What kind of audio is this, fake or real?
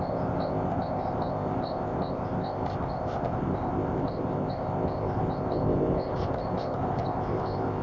fake